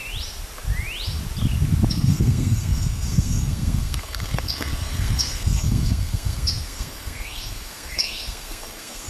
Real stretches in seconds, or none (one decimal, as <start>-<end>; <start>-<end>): 0.0-1.9